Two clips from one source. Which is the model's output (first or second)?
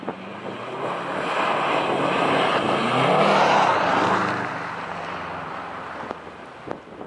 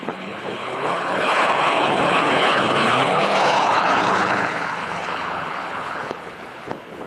second